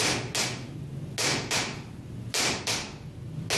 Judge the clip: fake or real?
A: real